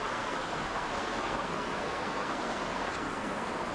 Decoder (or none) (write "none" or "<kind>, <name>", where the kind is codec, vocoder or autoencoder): codec, SNAC